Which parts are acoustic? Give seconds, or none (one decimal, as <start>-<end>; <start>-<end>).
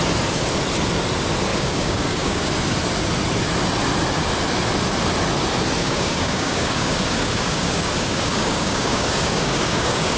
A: 0.0-1.5; 2.5-5.8